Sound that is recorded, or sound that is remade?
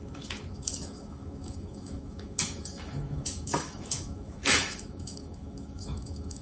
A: remade